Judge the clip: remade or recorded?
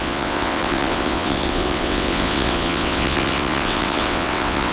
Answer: remade